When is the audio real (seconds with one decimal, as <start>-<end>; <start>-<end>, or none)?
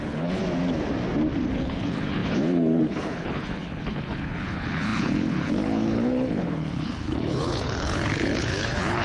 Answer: 0.4-1.5